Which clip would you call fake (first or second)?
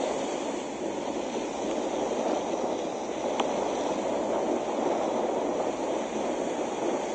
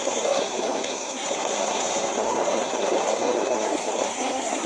second